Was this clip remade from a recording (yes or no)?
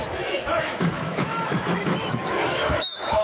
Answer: yes